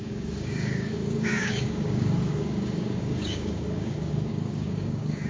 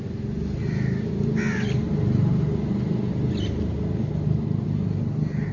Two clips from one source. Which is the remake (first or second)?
first